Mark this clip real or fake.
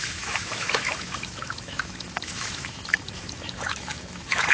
fake